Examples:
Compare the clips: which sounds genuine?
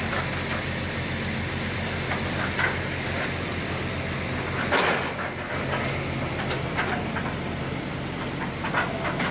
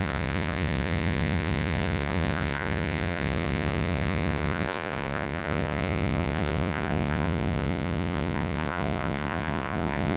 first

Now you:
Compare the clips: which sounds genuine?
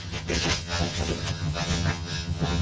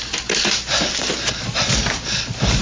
second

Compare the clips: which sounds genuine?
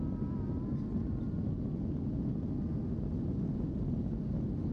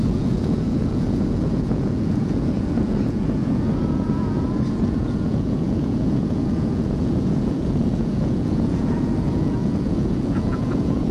first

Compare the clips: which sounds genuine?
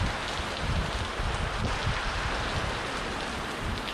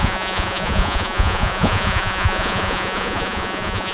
first